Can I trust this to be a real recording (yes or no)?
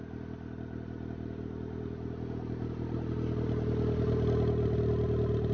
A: yes